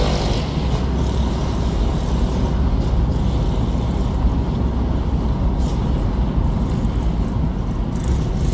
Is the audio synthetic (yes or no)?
no